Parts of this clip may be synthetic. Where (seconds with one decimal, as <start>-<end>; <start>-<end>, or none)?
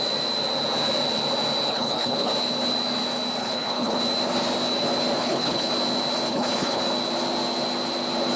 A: 1.7-2.3; 3.4-4.0; 5.2-5.7; 6.3-6.8